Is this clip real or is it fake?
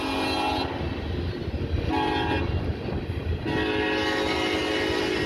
real